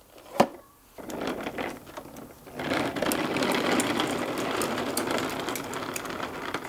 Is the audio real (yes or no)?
yes